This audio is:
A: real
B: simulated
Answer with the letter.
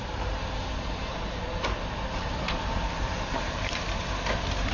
B